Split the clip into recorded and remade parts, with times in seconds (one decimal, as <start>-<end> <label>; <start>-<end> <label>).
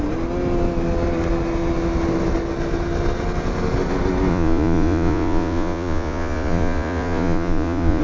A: 0.0-4.3 recorded; 4.3-8.0 remade